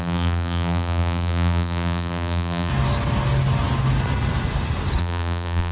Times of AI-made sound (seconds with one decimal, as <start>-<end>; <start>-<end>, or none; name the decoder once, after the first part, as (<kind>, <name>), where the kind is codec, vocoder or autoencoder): 0.0-2.7 (vocoder, BigVGAN v2); 5.0-5.7